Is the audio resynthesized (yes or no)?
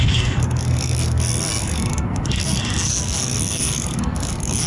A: yes